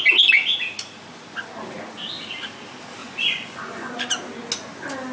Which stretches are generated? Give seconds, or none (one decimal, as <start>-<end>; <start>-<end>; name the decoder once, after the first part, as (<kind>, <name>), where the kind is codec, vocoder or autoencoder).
3.0-3.9 (vocoder, Vocos)